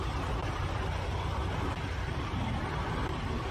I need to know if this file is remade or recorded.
recorded